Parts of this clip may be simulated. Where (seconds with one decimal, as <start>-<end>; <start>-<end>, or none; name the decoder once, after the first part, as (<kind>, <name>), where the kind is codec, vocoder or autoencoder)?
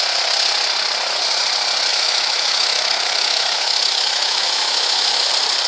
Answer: 1.9-5.3 (autoencoder, DAC-VAE)